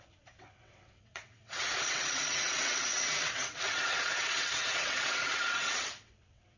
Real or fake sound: fake